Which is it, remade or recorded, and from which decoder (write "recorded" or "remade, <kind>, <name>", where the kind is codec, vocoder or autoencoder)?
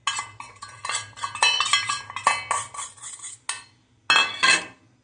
recorded